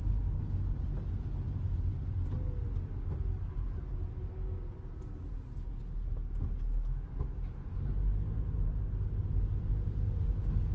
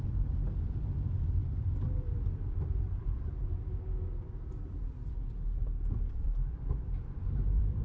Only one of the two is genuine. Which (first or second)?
first